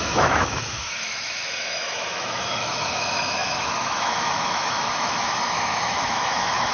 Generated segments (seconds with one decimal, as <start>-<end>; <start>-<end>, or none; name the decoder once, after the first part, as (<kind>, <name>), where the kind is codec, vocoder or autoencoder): 0.0-6.7 (autoencoder, DAC-VAE)